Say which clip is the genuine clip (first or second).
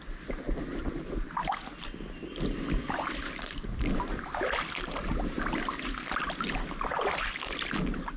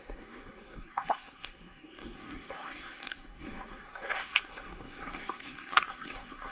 first